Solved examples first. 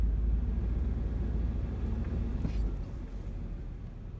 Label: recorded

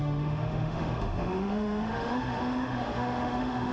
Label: remade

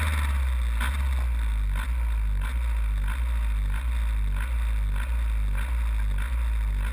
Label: recorded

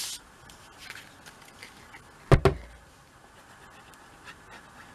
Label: recorded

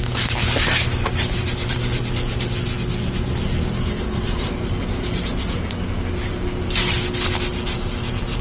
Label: recorded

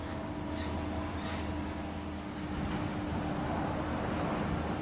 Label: recorded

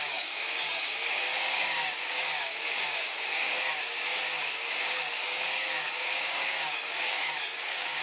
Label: remade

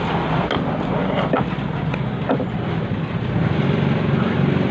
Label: recorded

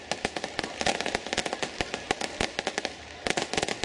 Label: recorded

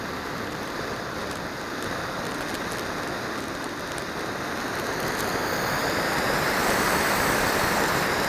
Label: recorded